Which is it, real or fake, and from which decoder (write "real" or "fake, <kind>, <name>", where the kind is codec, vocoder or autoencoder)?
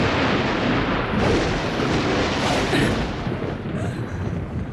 real